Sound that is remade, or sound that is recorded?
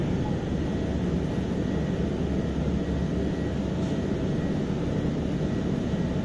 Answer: recorded